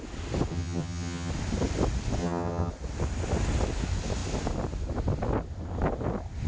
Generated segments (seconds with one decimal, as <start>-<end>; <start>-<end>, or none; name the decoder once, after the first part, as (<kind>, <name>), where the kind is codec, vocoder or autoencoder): 0.5-1.3 (vocoder, HiFi-GAN); 2.2-2.7